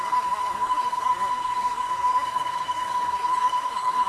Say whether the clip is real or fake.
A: fake